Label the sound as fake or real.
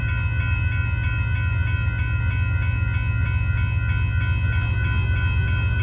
real